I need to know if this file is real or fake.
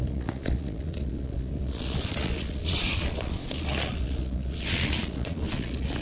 fake